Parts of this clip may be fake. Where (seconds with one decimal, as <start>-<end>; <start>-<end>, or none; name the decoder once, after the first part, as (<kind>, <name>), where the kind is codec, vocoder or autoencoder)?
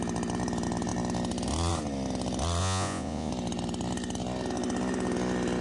2.6-3.3 (vocoder, Vocos)